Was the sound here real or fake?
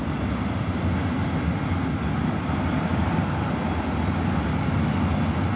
real